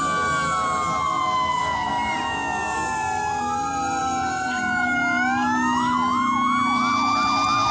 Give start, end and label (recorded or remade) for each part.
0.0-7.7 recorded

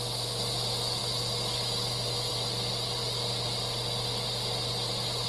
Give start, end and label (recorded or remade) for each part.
0.0-1.0 recorded; 1.0-2.3 remade; 2.3-5.3 recorded

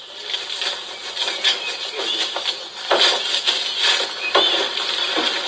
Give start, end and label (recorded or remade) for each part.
0.0-1.0 remade; 1.0-4.2 recorded; 4.2-5.5 remade

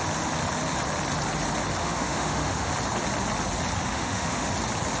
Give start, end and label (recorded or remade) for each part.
0.0-1.8 recorded; 1.8-2.7 remade; 2.7-3.9 recorded; 3.9-4.5 remade; 4.5-5.0 recorded

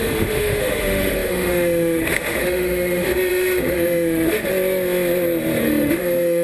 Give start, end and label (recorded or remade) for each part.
0.0-4.5 remade; 4.5-5.6 recorded; 5.6-6.4 remade

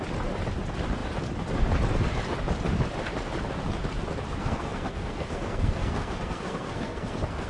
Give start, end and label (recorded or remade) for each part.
0.0-4.4 recorded; 4.4-7.5 remade

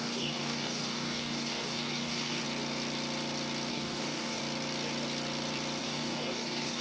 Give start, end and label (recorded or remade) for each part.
0.0-2.4 remade; 2.4-3.7 recorded; 3.7-4.4 remade; 4.4-5.8 recorded; 5.8-6.8 remade

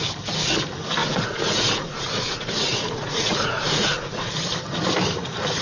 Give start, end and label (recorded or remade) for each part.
0.0-1.0 recorded; 1.0-4.3 remade; 4.3-5.6 recorded